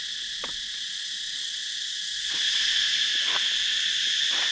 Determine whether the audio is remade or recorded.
recorded